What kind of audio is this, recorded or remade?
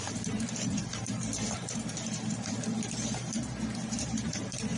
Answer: remade